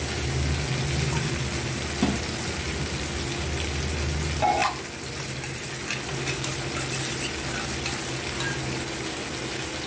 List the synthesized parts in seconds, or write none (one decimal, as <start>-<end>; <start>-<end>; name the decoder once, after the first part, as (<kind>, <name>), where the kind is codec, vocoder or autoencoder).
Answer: none